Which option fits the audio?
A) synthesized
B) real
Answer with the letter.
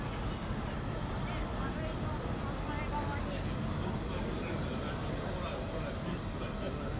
B